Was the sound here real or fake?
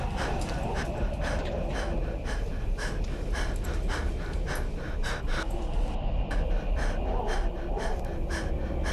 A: real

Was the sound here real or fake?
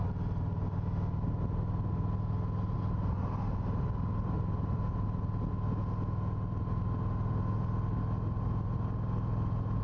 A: real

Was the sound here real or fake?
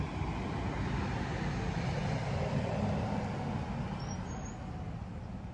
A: real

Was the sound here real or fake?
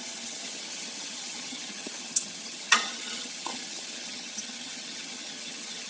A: fake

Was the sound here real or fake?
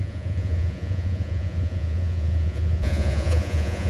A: fake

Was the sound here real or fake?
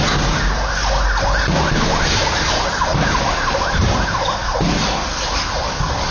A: real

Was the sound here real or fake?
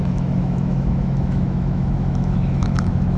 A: fake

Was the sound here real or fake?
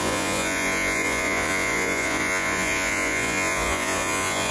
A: fake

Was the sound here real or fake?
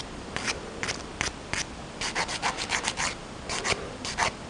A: real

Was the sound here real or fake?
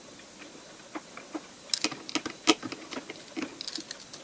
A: real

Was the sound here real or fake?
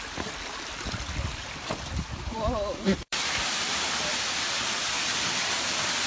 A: fake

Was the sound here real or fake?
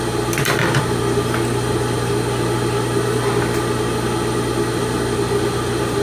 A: real